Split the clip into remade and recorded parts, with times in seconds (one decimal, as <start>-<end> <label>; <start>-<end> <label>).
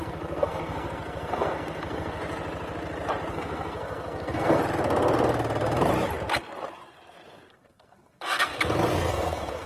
0.0-2.2 remade; 2.2-3.3 recorded; 3.3-4.6 remade; 4.6-7.5 recorded; 7.5-8.5 remade; 8.5-9.1 recorded; 9.1-9.7 remade